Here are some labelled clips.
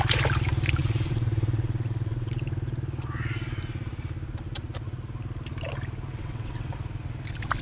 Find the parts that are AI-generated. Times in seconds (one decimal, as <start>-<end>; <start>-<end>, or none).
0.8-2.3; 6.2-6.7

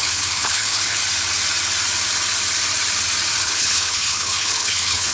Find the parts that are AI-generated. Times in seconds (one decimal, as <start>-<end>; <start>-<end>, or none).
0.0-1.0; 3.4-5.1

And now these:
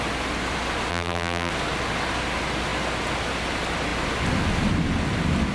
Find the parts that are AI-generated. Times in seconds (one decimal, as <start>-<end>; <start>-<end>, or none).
0.9-1.5

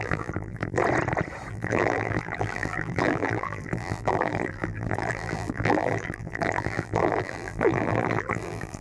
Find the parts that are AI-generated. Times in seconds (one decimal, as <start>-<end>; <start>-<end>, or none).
0.0-0.8; 1.5-8.8

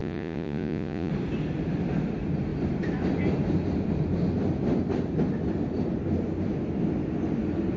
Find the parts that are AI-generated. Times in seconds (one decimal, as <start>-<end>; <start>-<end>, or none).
0.0-1.1